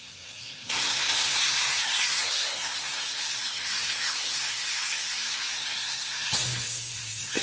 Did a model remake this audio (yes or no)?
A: yes